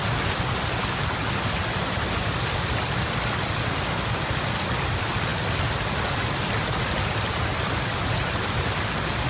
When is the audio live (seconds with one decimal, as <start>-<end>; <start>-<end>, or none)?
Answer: 0.0-9.3